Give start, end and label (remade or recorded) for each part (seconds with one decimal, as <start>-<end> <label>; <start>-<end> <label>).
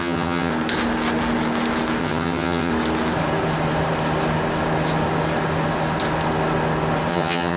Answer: 0.0-0.5 remade; 0.5-2.0 recorded; 2.0-2.7 remade; 2.7-7.1 recorded; 7.1-7.6 remade